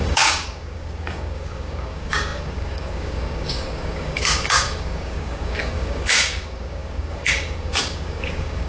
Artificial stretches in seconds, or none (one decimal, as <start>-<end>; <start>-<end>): 0.0-8.7